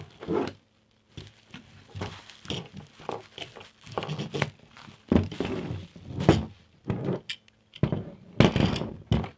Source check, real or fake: real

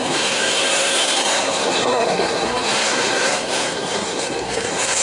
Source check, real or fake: fake